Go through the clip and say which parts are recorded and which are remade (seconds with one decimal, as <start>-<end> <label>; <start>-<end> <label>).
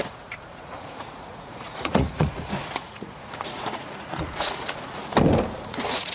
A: 0.0-5.0 remade; 5.0-5.6 recorded; 5.6-6.1 remade